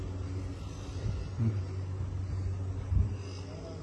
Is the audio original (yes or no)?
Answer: yes